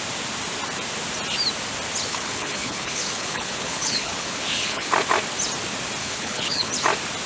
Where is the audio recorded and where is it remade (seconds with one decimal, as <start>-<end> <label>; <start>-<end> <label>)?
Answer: 0.0-2.1 recorded; 2.1-4.9 remade; 4.9-6.0 recorded; 6.0-6.7 remade; 6.7-7.3 recorded